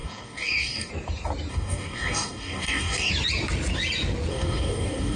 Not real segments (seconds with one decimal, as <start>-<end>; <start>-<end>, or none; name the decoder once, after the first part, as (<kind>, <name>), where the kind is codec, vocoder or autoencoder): 0.0-0.9 (codec, DAC); 1.5-3.1; 4.3-5.2